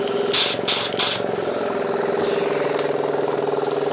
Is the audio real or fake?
real